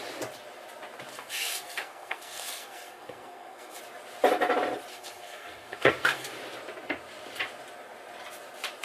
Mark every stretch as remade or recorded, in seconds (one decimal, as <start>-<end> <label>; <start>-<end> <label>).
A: 0.0-1.1 recorded; 1.1-3.8 remade; 3.8-4.9 recorded; 4.9-6.3 remade; 6.3-8.8 recorded